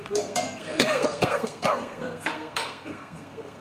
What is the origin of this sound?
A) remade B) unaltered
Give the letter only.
A